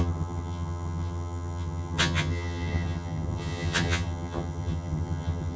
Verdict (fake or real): fake